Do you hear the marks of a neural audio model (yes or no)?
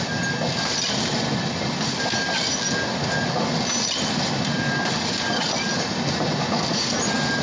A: no